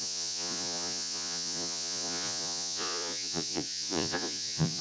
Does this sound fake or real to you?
fake